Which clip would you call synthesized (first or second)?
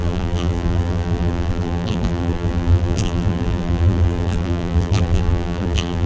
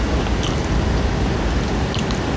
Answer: first